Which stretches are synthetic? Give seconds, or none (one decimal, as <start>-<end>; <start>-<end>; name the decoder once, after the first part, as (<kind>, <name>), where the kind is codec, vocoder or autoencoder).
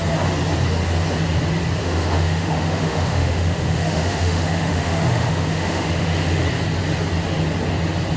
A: 1.8-6.5 (autoencoder, DAC-VAE)